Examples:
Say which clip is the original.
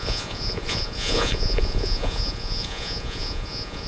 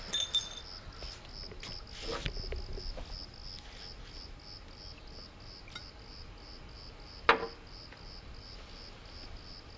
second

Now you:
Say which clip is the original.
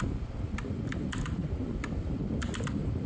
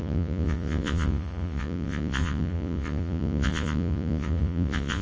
first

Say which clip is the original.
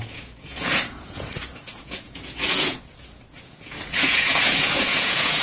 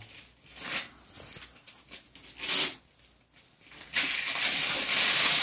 second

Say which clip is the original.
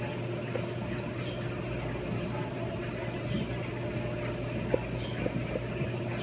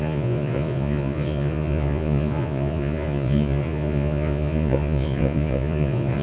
first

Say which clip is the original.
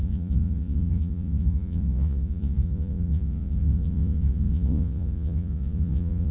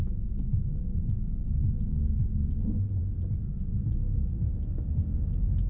second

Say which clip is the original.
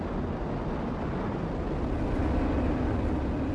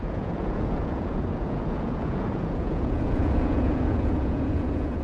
first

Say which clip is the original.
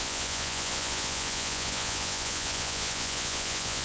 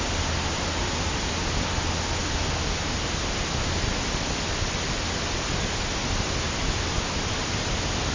second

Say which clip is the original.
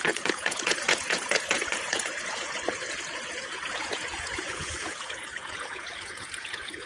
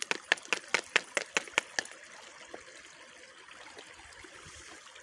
second